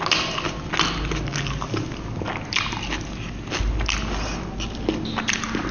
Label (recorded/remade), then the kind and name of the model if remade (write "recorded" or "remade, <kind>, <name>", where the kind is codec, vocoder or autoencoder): recorded